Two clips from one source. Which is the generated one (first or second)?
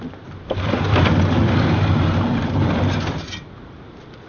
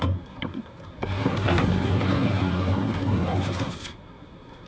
second